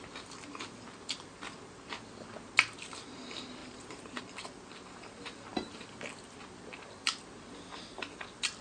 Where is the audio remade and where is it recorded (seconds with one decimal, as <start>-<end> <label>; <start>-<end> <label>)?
0.0-3.6 recorded; 3.6-4.2 remade; 4.2-5.5 recorded; 5.5-6.0 remade; 6.0-8.6 recorded